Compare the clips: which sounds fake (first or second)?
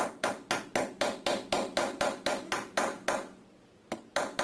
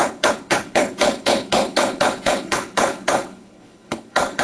second